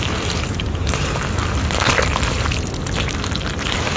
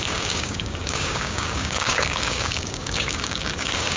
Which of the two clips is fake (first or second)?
second